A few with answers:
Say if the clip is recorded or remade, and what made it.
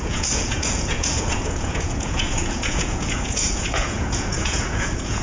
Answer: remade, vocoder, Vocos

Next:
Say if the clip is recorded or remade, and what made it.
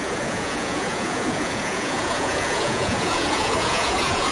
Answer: remade, vocoder, Vocos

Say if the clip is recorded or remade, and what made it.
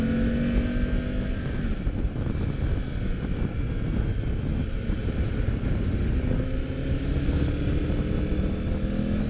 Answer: recorded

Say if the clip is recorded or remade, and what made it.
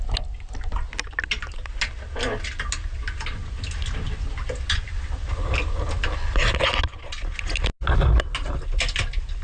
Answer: recorded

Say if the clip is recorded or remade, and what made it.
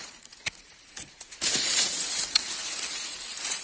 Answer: remade, vocoder, Vocos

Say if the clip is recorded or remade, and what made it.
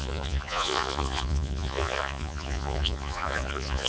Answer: remade, vocoder, Vocos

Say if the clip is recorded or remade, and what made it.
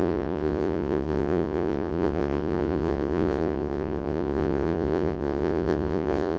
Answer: remade, vocoder, Vocos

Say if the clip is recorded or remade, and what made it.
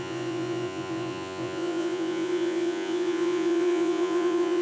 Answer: remade, vocoder, Vocos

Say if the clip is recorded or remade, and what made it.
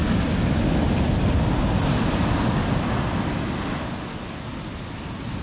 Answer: recorded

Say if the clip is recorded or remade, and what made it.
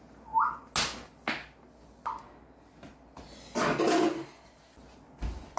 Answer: recorded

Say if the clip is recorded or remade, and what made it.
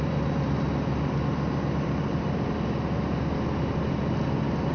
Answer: recorded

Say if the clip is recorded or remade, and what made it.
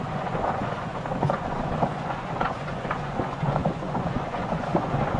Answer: remade, vocoder, Vocos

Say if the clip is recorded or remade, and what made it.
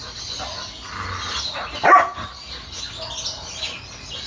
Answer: recorded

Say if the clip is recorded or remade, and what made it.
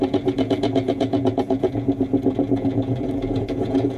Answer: remade, vocoder, Vocos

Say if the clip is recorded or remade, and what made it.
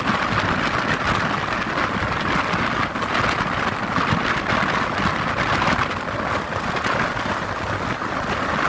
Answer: recorded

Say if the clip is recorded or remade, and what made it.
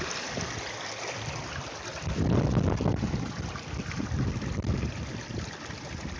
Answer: recorded